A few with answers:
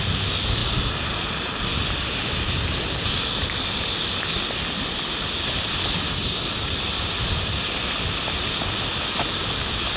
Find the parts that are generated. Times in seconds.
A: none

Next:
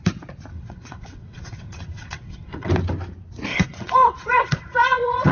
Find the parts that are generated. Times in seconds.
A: 0.5-2.7 (vocoder, WaveNeXt); 3.5-5.3